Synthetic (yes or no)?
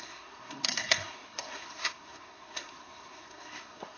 yes